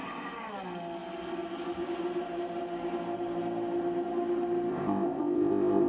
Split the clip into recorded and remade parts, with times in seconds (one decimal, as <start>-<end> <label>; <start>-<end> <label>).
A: 0.0-4.7 recorded; 4.7-5.9 remade